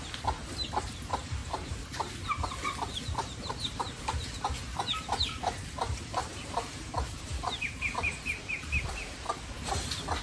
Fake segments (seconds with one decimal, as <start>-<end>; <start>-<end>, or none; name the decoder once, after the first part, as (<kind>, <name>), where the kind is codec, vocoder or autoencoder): 1.4-2.1 (vocoder, BigVGAN v2); 3.2-4.1; 6.2-9.2